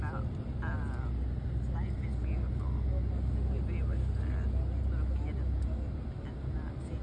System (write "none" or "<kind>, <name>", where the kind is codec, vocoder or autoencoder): none